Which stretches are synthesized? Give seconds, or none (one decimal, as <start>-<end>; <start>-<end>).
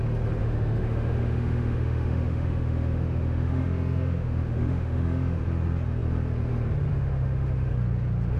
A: 0.4-5.4; 6.9-7.7